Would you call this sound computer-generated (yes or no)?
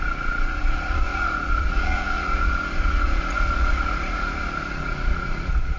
yes